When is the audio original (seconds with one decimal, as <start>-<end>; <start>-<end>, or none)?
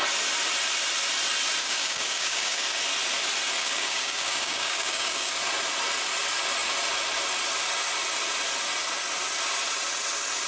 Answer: 0.0-1.6; 2.8-3.6; 5.3-10.5